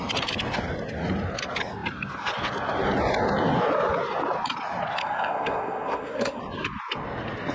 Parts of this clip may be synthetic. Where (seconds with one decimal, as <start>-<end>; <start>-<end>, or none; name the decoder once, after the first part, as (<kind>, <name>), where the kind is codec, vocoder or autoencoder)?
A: 5.0-6.4 (codec, SNAC)